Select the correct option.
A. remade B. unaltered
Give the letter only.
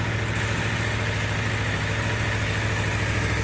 B